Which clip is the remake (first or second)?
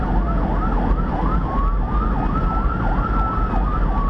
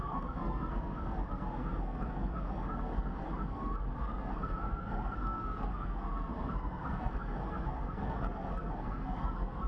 second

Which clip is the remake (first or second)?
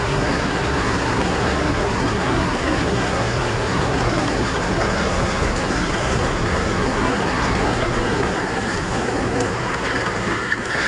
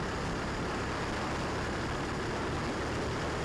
first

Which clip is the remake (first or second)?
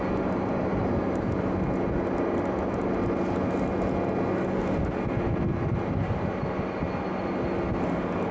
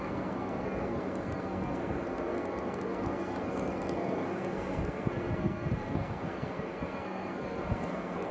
second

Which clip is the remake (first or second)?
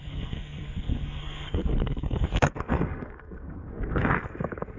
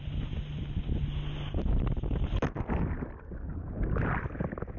first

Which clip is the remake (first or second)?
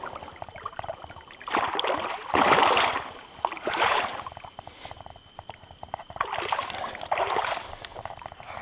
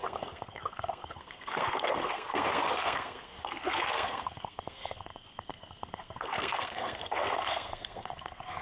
second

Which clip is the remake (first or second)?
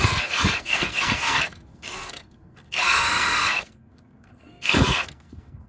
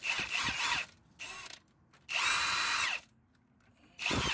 first